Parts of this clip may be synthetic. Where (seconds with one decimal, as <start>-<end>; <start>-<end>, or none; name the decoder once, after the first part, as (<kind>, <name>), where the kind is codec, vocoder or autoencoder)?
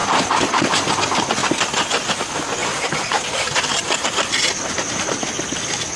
0.0-0.9 (vocoder, BigVGAN v2); 1.4-2.2; 2.6-4.5